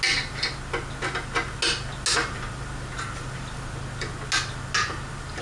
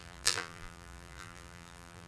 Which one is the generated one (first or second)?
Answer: second